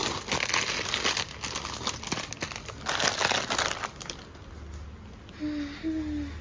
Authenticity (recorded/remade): recorded